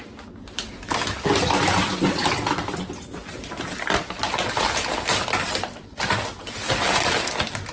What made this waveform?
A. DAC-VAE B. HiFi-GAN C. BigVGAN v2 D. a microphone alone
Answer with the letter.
D